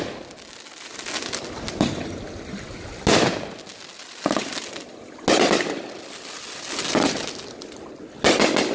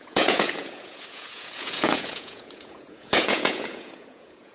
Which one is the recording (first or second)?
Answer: first